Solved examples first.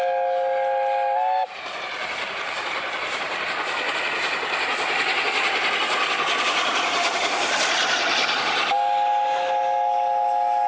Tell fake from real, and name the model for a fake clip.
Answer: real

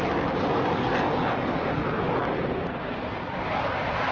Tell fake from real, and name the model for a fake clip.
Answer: real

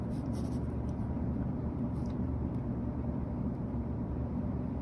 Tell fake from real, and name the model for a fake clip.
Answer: fake, vocoder, BigVGAN v2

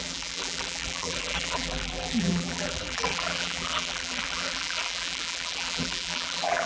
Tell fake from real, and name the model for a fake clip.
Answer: fake, vocoder, BigVGAN v2